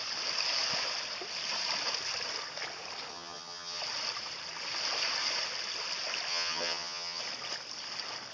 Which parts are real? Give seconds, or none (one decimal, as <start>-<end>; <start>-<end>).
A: 0.0-3.1; 3.8-6.3; 7.2-8.3